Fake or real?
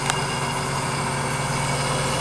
real